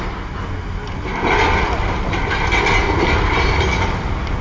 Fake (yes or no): no